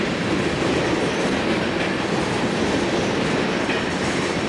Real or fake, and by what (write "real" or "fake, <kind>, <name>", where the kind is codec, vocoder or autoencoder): real